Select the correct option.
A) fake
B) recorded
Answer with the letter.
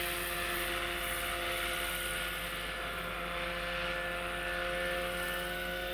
B